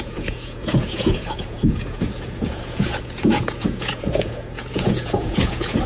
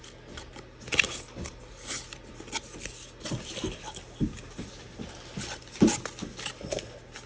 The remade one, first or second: first